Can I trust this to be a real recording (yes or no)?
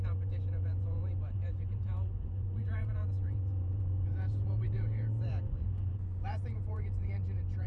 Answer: no